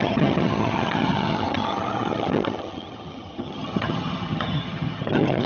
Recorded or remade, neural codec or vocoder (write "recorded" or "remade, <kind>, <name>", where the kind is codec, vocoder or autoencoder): remade, vocoder, HiFi-GAN